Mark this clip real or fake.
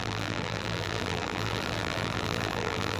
fake